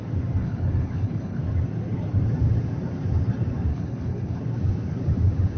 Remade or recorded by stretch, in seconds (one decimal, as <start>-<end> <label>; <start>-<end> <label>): 0.0-0.4 recorded; 0.4-1.4 remade; 1.4-3.7 recorded; 3.7-4.4 remade; 4.4-5.6 recorded